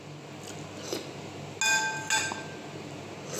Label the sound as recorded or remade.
recorded